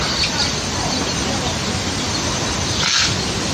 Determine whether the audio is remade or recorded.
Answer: recorded